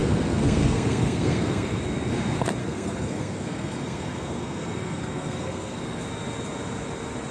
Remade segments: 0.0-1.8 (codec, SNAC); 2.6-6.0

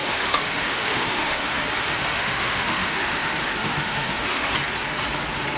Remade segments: 0.0-1.6 (autoencoder, DAC-VAE); 2.1-4.5